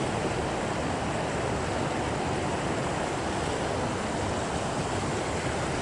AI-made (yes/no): no